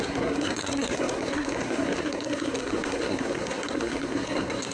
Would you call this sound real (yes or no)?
no